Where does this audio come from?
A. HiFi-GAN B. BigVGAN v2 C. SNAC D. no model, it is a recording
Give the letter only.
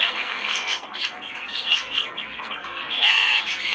C